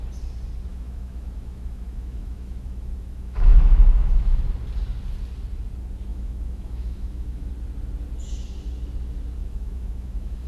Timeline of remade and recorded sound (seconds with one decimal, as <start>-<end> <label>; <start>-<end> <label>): 0.0-0.7 recorded; 0.7-4.4 remade; 4.4-6.1 recorded; 6.1-7.5 remade; 7.5-9.4 recorded; 9.4-10.5 remade